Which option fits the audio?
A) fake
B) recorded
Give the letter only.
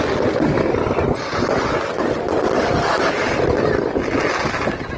B